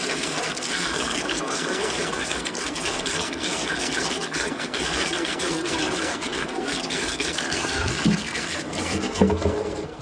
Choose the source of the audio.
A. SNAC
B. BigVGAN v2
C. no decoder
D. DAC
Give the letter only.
A